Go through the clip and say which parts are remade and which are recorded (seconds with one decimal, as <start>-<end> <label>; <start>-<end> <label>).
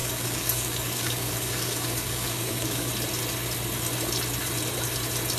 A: 0.0-2.9 remade; 2.9-5.4 recorded